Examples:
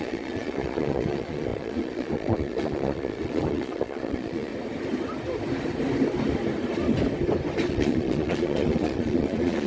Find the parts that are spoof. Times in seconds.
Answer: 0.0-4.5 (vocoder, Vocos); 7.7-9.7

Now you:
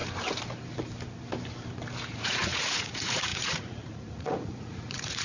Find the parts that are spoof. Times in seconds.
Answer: 2.1-5.2 (vocoder, Vocos)

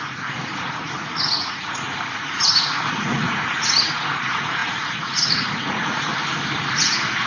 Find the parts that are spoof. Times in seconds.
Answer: 0.0-6.1 (vocoder, Vocos); 6.7-7.3

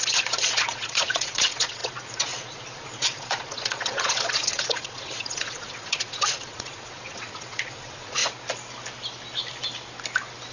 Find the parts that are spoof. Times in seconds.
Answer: 0.0-8.2 (vocoder, Vocos)